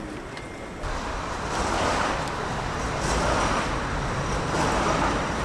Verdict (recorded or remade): remade